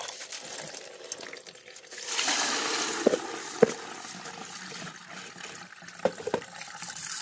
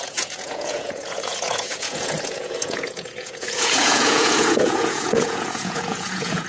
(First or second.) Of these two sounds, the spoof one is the second